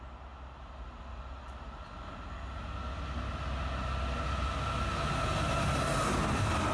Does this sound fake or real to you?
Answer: real